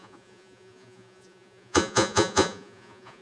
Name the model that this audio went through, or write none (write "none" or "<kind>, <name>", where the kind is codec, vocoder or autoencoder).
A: vocoder, Vocos